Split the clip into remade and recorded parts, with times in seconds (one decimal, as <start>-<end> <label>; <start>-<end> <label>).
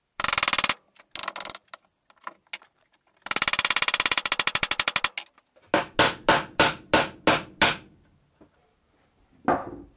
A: 0.0-10.0 recorded